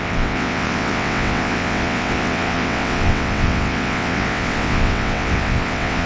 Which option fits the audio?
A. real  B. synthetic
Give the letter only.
B